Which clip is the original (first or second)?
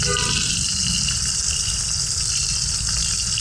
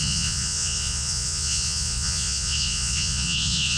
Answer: first